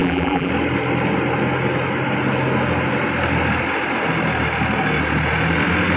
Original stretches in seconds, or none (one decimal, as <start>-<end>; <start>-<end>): 0.5-6.0